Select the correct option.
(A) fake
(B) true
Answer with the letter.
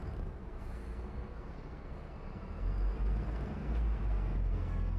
A